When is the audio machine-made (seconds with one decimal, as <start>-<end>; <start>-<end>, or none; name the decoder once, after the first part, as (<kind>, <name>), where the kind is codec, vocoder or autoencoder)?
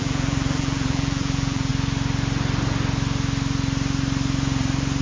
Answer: 0.0-1.7 (vocoder, BigVGAN v2)